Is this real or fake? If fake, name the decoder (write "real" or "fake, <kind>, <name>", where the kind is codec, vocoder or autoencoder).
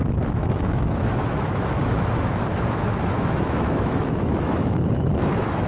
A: fake, autoencoder, DAC-VAE